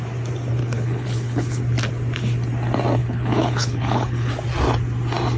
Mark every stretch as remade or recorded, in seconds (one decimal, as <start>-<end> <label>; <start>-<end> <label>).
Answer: 0.0-0.6 recorded; 0.6-1.6 remade; 1.6-3.0 recorded; 3.0-4.3 remade; 4.3-5.4 recorded